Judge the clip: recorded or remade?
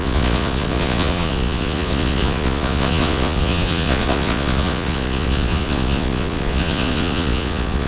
remade